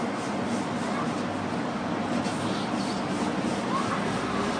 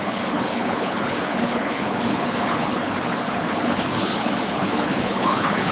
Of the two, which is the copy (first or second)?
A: second